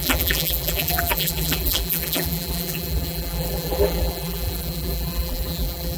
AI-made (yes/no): yes